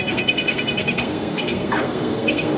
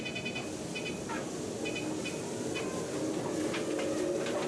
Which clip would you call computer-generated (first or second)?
first